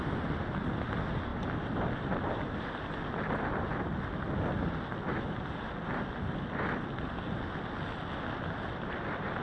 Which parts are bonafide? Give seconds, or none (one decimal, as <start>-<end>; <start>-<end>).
0.0-9.4

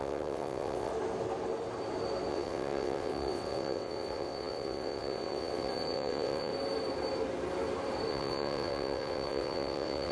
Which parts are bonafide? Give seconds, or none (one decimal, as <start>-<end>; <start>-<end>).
0.9-2.3; 6.5-8.1

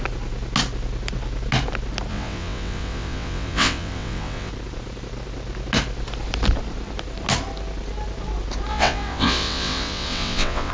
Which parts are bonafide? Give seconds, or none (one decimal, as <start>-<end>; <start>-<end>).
0.0-2.1; 4.5-8.7

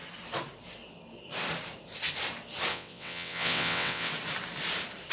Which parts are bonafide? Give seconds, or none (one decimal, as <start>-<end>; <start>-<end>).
0.0-2.7; 4.1-5.1